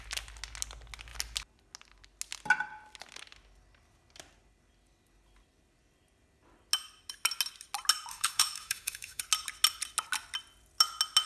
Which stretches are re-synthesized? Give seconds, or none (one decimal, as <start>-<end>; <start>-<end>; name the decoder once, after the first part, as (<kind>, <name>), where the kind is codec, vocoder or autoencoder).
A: 8.1-9.2 (autoencoder, DAC-VAE)